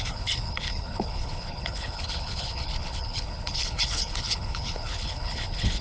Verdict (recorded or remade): remade